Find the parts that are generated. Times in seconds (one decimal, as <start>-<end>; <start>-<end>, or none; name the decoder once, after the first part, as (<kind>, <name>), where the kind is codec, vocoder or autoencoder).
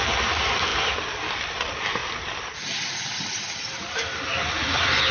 none